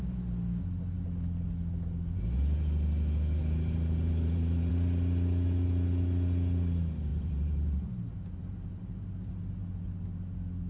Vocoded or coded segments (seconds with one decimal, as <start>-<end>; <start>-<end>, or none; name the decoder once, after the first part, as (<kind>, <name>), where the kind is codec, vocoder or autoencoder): 3.4-4.7 (vocoder, BigVGAN v2); 7.1-9.3